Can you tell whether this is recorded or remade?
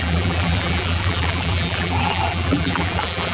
remade